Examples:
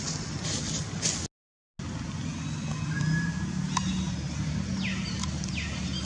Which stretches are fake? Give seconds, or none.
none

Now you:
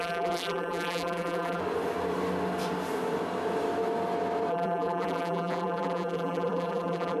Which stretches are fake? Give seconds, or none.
0.0-1.6 (vocoder, BigVGAN v2); 4.5-7.2

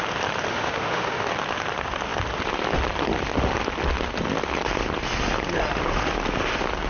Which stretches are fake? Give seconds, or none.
0.5-1.3 (autoencoder, DAC-VAE)

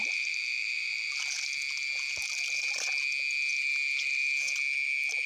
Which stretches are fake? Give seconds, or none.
0.0-1.1 (vocoder, BigVGAN v2)